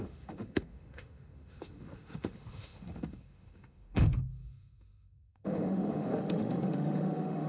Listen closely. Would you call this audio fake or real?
fake